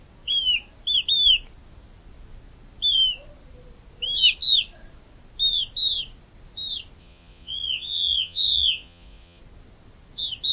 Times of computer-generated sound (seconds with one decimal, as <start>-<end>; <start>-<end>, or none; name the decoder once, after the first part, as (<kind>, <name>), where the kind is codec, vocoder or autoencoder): 7.0-9.4 (vocoder, Vocos)